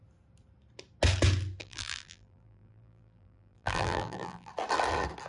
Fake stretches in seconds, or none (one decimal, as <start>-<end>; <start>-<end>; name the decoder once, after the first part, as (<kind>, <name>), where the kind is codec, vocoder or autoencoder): 1.6-4.5 (vocoder, BigVGAN v2)

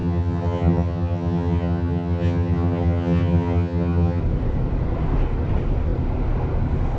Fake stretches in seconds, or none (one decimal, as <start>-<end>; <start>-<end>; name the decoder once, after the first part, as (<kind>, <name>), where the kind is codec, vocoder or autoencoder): 0.0-4.2 (vocoder, HiFi-GAN)

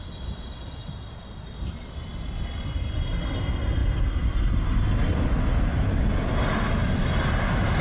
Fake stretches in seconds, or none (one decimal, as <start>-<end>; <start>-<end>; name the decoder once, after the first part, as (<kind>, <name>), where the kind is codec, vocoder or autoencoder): none

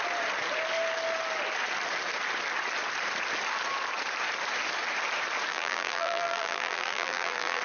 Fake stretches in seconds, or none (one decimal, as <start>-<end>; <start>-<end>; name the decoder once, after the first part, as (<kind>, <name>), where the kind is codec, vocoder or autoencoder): 5.5-7.6 (vocoder, BigVGAN v2)

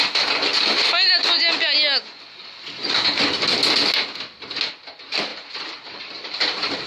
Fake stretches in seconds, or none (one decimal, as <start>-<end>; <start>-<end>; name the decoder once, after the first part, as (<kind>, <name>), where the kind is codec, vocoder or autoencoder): 5.3-6.9 (vocoder, BigVGAN v2)

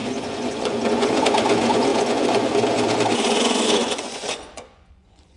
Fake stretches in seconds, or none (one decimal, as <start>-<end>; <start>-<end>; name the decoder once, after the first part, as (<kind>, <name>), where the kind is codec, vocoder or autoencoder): 0.0-5.4 (vocoder, Vocos)